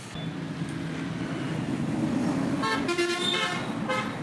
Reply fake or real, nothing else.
real